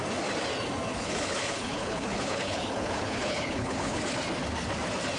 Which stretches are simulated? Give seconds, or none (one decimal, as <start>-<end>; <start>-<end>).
0.9-4.0